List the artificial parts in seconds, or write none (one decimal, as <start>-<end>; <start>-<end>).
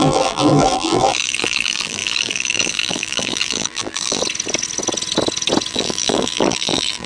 0.0-4.2; 5.7-7.1